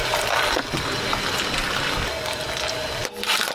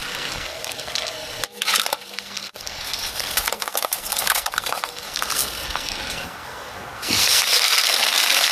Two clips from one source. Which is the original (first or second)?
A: first